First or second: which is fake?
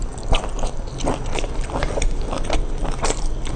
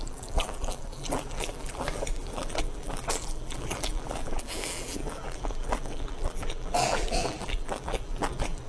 second